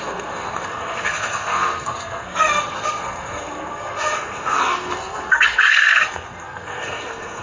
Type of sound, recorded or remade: remade